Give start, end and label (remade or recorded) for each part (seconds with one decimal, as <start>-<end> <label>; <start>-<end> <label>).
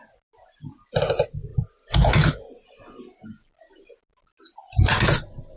0.0-5.6 recorded